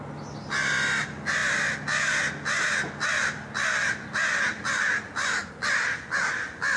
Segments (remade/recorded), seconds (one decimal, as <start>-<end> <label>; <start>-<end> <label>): 0.0-6.8 recorded